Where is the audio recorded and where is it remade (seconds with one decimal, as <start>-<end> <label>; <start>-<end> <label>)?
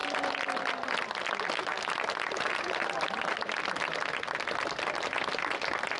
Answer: 0.0-6.0 recorded